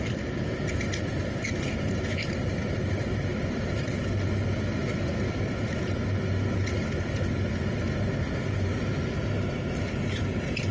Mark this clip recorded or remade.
recorded